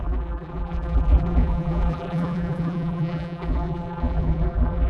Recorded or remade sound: remade